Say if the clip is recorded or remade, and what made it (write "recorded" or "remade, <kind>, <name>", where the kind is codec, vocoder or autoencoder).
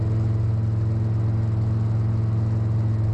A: recorded